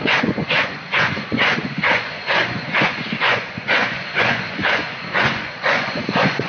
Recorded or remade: remade